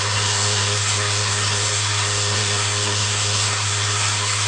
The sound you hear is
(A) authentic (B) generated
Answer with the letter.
B